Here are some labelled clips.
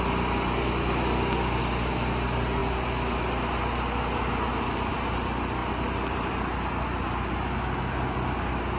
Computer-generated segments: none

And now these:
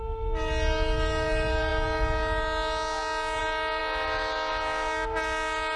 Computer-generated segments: none